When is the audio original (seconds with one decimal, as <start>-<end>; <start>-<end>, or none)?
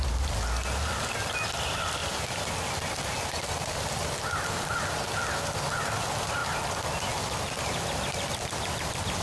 0.0-9.2